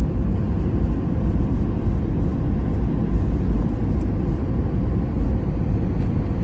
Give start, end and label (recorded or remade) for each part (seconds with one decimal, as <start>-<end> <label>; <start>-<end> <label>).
0.0-6.4 recorded